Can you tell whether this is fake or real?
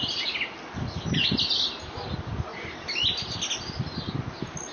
real